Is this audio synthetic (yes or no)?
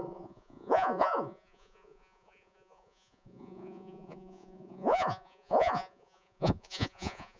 yes